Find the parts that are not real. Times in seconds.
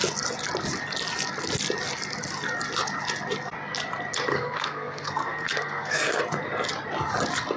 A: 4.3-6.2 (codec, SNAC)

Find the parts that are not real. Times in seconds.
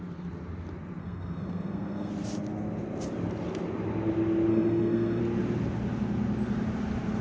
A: 1.0-2.1 (codec, SNAC); 4.5-5.2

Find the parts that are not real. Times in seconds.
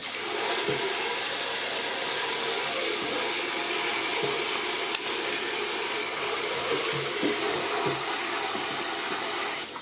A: none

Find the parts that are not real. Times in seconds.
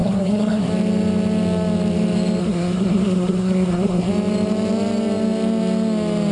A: 0.0-0.7 (codec, SNAC); 2.4-4.1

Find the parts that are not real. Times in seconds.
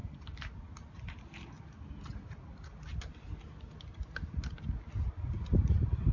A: none